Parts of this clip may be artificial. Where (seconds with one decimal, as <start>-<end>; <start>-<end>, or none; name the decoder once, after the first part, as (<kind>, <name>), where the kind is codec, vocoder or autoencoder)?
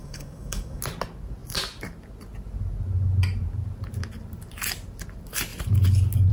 0.0-0.8 (codec, DAC)